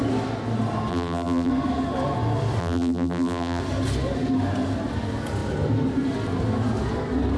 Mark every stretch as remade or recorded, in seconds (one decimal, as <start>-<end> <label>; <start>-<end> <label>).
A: 0.0-0.9 recorded; 0.9-1.5 remade; 1.5-2.6 recorded; 2.6-3.6 remade; 3.6-7.4 recorded